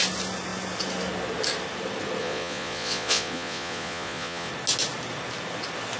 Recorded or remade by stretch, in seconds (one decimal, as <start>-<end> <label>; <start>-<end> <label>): 0.0-2.2 recorded; 2.2-4.5 remade; 4.5-6.0 recorded